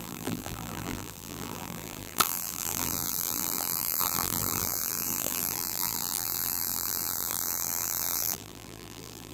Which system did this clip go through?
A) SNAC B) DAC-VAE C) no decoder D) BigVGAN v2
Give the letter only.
D